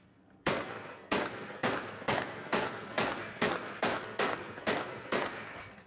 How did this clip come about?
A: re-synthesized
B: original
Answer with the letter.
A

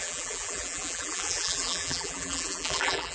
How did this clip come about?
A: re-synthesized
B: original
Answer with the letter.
A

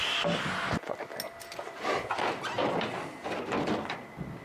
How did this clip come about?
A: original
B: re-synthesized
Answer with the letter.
A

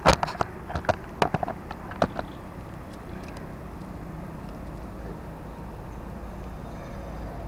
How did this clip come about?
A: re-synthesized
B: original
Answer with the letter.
B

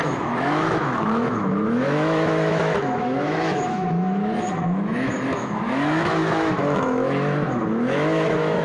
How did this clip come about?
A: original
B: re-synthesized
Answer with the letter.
B